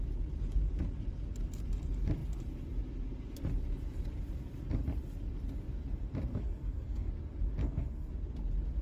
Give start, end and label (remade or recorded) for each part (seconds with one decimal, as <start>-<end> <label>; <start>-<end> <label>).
0.0-6.3 recorded; 6.3-7.1 remade; 7.1-7.6 recorded; 7.6-8.1 remade; 8.1-8.8 recorded